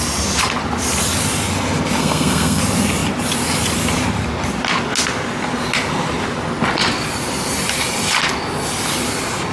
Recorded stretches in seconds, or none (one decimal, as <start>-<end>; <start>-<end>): 0.0-2.0; 2.6-9.5